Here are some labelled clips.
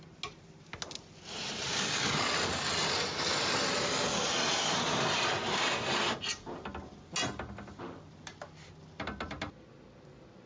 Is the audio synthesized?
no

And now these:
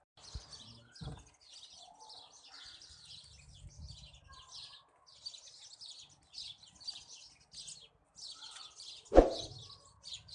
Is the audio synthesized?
no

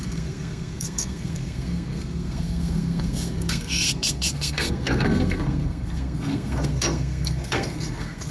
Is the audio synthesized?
yes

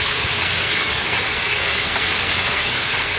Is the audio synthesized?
yes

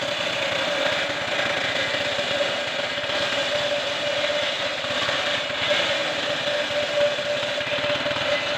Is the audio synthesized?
no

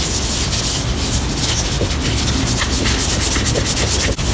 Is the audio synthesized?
no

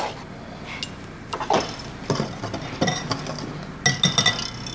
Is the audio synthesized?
no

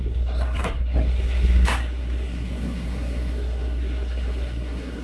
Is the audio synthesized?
yes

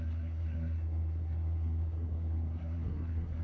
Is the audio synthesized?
yes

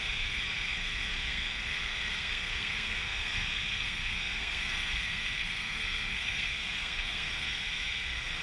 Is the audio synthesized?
yes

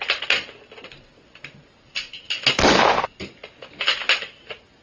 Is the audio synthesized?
no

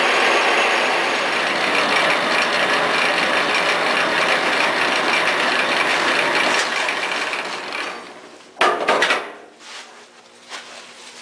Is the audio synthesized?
no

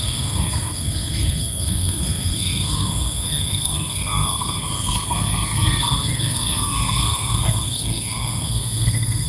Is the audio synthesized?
yes